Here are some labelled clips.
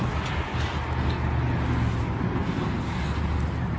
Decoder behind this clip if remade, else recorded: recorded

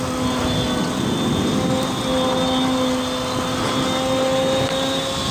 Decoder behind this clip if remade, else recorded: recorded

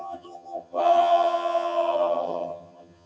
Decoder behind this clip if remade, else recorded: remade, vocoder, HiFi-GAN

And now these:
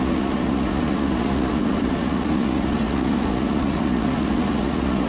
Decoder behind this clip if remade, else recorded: remade, vocoder, Vocos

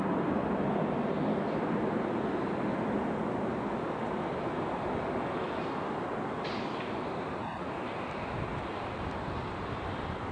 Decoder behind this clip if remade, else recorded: recorded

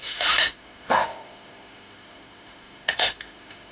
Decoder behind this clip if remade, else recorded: remade, autoencoder, DAC-VAE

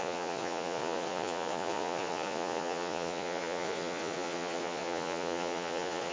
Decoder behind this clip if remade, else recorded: remade, vocoder, Vocos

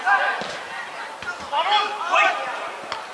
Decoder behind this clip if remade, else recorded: recorded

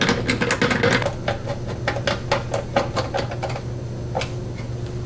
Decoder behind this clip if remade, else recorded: recorded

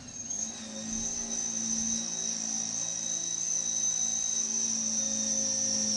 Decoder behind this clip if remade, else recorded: recorded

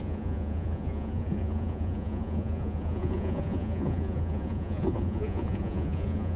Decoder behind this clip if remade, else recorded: remade, vocoder, Vocos